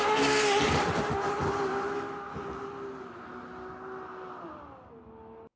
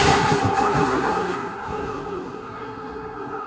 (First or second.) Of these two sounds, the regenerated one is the second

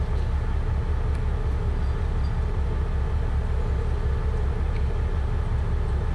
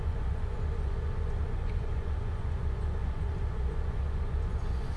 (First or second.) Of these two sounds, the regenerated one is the second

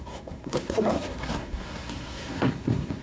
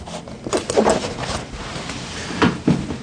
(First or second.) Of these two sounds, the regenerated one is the first